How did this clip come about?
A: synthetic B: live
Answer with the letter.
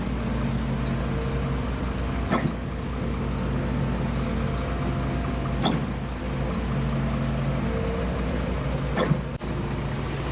B